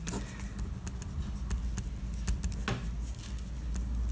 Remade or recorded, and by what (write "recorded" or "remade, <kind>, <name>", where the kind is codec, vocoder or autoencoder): recorded